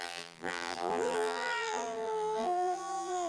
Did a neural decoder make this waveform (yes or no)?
yes